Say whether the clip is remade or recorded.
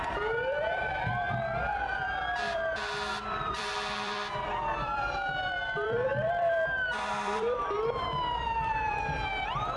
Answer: remade